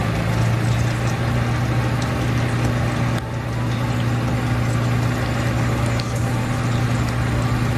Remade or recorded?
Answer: recorded